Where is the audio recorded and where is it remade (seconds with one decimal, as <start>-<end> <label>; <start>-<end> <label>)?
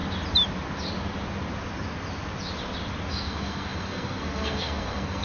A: 0.0-3.1 recorded; 3.1-5.2 remade